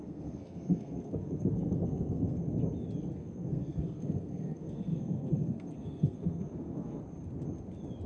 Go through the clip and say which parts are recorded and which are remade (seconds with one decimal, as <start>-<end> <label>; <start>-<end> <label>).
0.0-2.4 remade; 2.4-3.2 recorded; 3.2-7.0 remade; 7.0-8.1 recorded